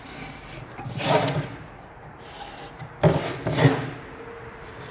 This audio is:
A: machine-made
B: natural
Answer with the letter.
B